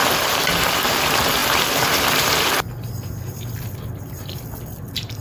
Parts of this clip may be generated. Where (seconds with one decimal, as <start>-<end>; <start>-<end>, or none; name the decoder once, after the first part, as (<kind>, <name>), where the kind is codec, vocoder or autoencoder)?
1.4-4.5 (vocoder, BigVGAN v2)